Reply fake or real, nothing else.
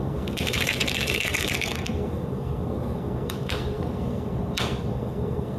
fake